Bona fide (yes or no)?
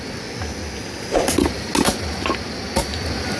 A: yes